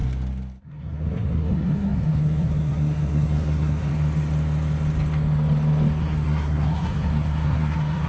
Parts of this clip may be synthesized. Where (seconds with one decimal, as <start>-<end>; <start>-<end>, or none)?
0.6-3.9; 6.0-8.1